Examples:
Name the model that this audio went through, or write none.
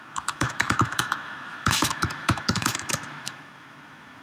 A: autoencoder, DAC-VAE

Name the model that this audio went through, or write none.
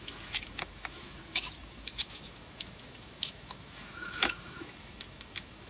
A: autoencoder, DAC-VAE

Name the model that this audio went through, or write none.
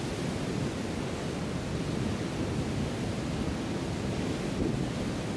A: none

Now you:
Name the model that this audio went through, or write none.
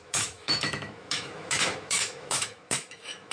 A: autoencoder, DAC-VAE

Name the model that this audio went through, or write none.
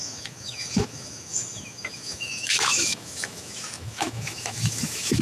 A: autoencoder, DAC-VAE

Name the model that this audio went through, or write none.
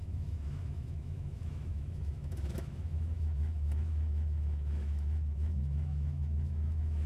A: autoencoder, DAC-VAE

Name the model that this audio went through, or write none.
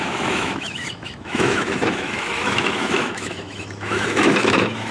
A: autoencoder, DAC-VAE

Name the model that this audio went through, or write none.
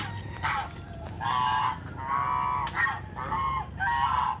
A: none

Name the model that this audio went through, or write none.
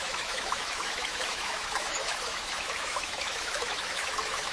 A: autoencoder, DAC-VAE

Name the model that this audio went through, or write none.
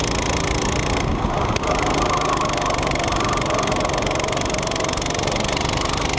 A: none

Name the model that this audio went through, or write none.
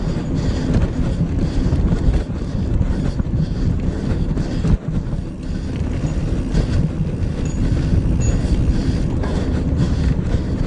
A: none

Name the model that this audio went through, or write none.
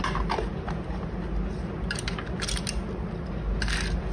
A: none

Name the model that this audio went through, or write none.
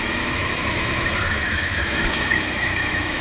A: autoencoder, DAC-VAE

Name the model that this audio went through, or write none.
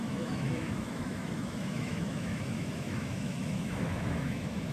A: autoencoder, DAC-VAE